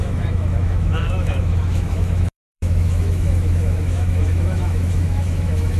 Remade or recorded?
remade